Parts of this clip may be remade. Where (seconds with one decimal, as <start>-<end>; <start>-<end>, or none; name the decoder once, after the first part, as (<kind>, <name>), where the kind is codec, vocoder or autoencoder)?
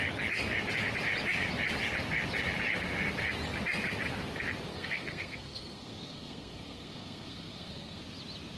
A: 4.7-8.0 (codec, SNAC)